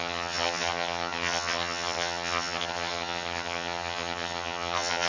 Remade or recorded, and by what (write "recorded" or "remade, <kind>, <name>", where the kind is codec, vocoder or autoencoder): remade, vocoder, HiFi-GAN